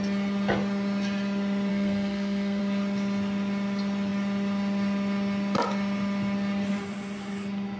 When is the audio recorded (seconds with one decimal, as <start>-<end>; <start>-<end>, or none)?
0.0-1.7; 2.6-7.8